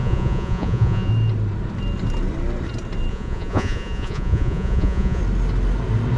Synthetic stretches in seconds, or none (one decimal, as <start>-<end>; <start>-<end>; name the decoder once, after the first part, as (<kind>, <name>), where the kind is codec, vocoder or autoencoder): 0.0-1.1 (vocoder, Vocos); 3.1-5.2